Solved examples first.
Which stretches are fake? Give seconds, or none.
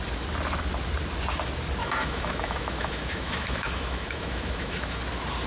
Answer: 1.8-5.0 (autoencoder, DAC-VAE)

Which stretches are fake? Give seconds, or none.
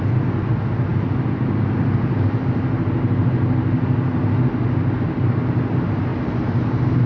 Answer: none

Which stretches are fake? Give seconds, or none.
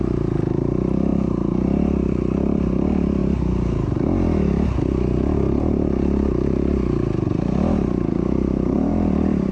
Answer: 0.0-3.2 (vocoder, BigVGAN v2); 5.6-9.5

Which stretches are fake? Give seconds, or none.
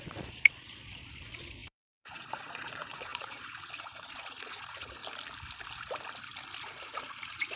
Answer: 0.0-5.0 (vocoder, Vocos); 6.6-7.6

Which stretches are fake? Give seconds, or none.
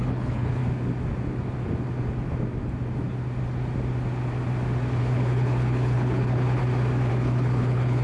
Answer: 0.0-0.6 (codec, HILCodec); 5.0-6.6; 7.1-8.0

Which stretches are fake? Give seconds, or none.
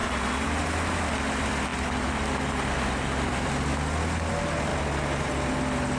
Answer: none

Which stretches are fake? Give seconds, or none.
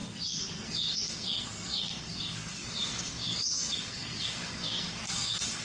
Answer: 0.0-5.6 (codec, SNAC)